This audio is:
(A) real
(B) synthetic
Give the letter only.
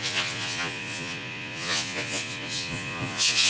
B